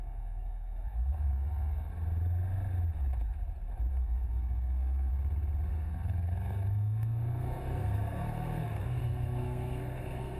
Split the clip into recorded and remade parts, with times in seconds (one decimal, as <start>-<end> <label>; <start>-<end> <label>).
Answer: 0.0-1.9 remade; 1.9-3.9 recorded; 3.9-5.1 remade; 5.1-5.7 recorded; 5.7-10.4 remade

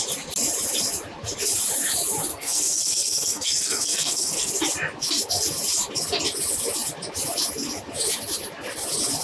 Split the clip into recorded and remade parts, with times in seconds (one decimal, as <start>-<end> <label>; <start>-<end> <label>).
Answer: 0.0-2.3 recorded; 2.3-4.5 remade; 4.5-9.2 recorded

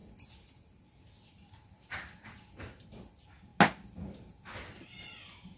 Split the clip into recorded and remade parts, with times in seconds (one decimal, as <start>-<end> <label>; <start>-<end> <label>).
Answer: 0.0-5.6 recorded

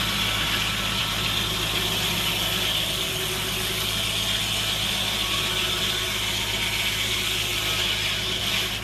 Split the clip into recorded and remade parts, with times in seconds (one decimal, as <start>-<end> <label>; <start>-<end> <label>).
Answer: 0.0-8.8 recorded

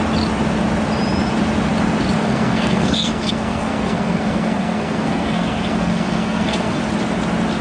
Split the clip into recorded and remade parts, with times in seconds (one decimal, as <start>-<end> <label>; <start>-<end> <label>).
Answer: 0.0-2.2 recorded; 2.2-6.8 remade; 6.8-7.6 recorded